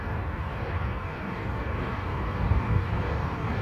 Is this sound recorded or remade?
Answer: remade